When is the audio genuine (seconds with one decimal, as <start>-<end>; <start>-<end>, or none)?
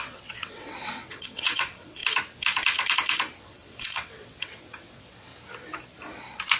2.0-3.4; 5.3-6.6